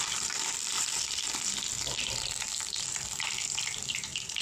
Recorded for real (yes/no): no